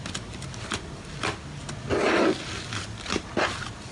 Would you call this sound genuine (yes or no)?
yes